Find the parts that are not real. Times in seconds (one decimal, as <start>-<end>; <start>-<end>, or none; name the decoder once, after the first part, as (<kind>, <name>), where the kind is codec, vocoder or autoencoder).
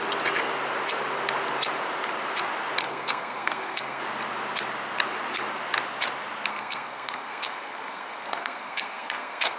2.8-4.0 (codec, SNAC); 6.5-9.6